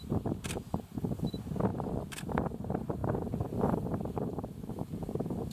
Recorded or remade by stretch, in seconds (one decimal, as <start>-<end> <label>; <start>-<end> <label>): 0.0-3.0 remade; 3.0-4.7 recorded; 4.7-5.5 remade